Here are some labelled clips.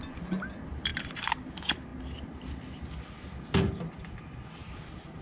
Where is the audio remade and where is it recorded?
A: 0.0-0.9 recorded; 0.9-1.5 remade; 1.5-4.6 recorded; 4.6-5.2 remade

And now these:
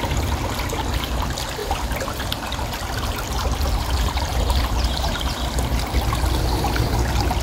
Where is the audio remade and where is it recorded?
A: 0.0-1.6 recorded; 1.6-2.1 remade; 2.1-4.3 recorded; 4.3-5.3 remade; 5.3-7.4 recorded

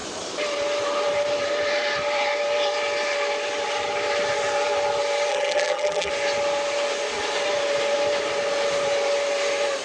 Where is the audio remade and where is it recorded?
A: 0.0-5.3 recorded; 5.3-6.1 remade; 6.1-9.8 recorded

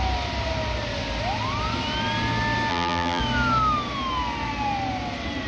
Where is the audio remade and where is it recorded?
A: 0.0-2.7 recorded; 2.7-3.2 remade; 3.2-5.5 recorded

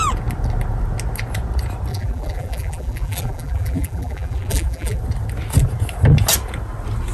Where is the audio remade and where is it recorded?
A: 0.0-1.9 recorded; 1.9-5.0 remade; 5.0-7.1 recorded